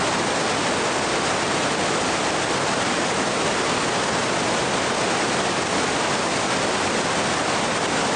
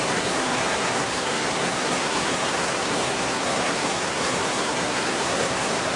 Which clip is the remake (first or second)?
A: second